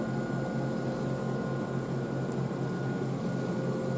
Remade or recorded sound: recorded